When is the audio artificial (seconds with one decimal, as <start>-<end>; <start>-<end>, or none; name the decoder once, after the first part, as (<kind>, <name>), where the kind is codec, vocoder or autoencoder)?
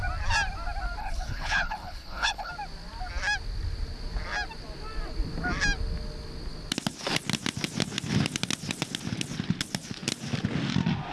1.0-2.5 (codec, HILCodec)